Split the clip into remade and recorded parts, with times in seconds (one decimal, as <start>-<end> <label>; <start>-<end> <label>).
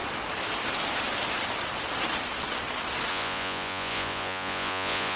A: 0.0-3.1 recorded; 3.1-5.2 remade